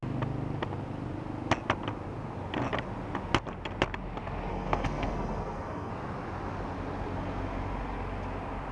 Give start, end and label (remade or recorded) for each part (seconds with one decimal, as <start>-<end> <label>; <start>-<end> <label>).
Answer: 0.0-4.5 recorded; 4.5-5.9 remade; 5.9-8.7 recorded